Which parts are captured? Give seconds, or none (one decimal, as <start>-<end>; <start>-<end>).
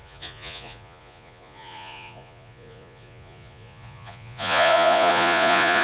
none